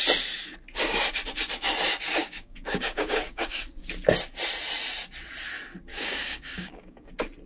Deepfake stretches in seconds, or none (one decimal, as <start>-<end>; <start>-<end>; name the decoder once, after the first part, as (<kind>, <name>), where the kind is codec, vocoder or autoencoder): 2.2-3.6 (codec, DAC); 5.9-7.1